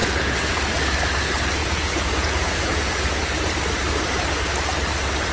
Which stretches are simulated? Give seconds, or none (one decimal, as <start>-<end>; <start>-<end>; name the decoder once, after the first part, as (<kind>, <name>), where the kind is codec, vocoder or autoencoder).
0.0-0.7 (vocoder, Vocos); 1.6-3.5